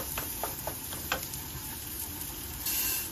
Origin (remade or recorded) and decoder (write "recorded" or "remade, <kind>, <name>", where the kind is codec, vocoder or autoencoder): remade, vocoder, BigVGAN v2